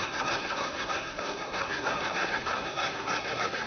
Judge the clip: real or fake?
fake